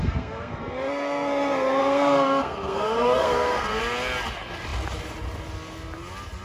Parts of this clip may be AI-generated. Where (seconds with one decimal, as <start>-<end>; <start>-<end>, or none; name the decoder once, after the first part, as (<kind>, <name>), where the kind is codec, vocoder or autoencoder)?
0.0-3.8 (codec, SNAC)